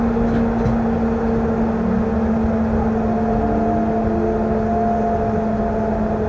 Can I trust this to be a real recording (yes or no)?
yes